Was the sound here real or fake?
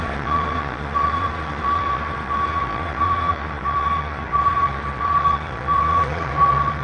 fake